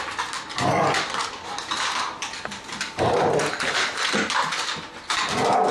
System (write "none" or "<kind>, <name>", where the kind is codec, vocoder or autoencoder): vocoder, BigVGAN v2